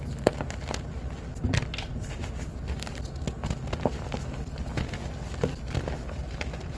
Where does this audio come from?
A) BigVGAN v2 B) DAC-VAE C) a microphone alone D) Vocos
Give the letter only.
C